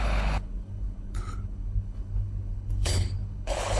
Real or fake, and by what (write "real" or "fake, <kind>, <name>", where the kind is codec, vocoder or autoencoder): fake, codec, HILCodec